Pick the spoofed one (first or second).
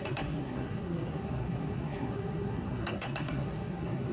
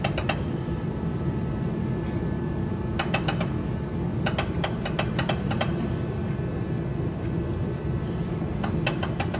first